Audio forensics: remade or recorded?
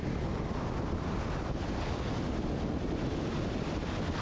recorded